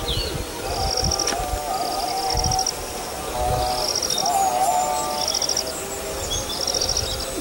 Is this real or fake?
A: real